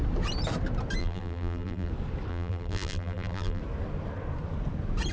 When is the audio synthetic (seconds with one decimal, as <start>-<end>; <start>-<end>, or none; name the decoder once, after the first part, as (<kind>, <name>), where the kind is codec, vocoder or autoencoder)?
1.0-1.9 (vocoder, BigVGAN v2); 2.3-3.6